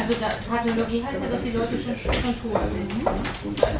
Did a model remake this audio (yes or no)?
no